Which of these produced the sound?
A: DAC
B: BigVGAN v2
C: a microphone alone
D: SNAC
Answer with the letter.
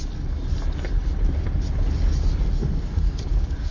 C